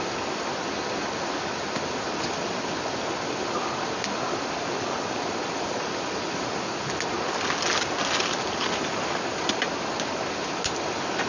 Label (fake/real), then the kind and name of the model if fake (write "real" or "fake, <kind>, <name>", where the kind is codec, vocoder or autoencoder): real